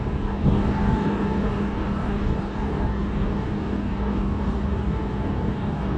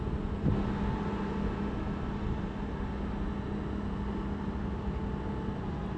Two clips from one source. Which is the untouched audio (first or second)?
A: second